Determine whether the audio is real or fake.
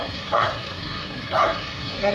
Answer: fake